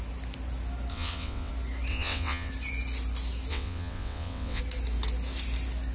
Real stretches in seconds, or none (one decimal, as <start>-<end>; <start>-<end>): 0.0-0.9; 1.5-1.9; 2.5-3.5; 4.6-5.9